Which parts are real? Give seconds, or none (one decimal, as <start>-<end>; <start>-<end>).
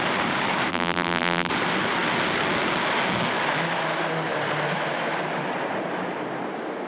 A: 0.0-0.7; 1.5-6.9